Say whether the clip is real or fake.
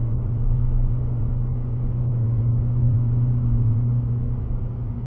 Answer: fake